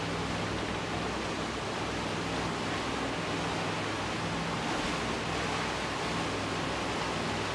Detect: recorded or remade recorded